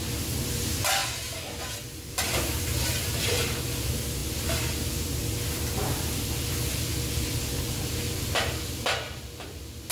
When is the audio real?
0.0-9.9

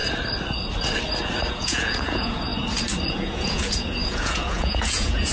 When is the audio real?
0.0-1.5; 2.5-3.1

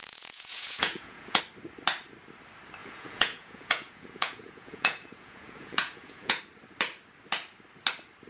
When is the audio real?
1.4-2.8; 6.4-8.3

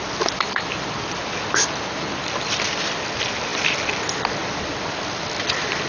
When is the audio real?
0.0-5.9

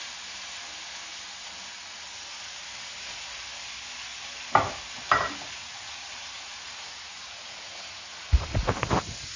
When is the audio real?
0.0-5.6; 8.3-9.4

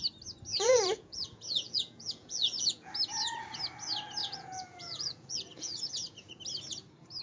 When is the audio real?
0.0-0.5; 2.9-4.2; 6.4-7.2

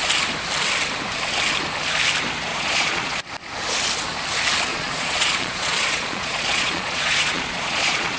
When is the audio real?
0.0-2.5; 3.3-4.7